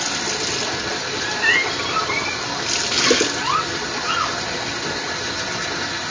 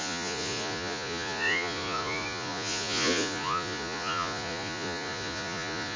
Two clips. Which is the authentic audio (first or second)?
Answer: first